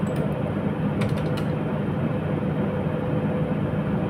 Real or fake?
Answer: real